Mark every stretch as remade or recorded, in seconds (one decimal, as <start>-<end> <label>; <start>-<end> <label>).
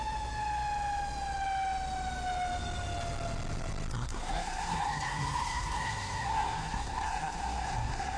0.0-3.9 recorded; 3.9-8.2 remade